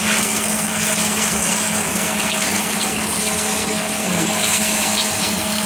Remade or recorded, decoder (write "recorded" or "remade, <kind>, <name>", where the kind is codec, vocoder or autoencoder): remade, codec, SNAC